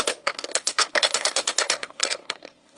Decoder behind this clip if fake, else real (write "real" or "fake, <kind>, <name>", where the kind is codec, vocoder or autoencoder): fake, codec, SNAC